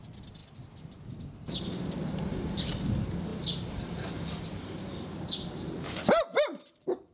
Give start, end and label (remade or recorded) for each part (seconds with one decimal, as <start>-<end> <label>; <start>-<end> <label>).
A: 0.0-7.1 recorded